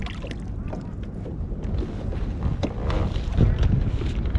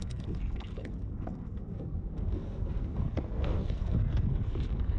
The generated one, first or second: second